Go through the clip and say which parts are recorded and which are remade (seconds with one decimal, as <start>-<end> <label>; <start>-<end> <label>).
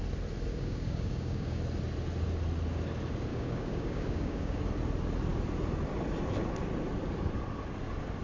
0.0-0.5 recorded; 0.5-1.6 remade; 1.6-3.3 recorded; 3.3-4.6 remade; 4.6-8.2 recorded